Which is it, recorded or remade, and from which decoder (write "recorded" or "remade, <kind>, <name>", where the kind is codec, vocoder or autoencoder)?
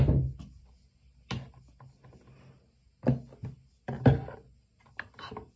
recorded